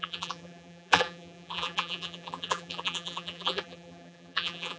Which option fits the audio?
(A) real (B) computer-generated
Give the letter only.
B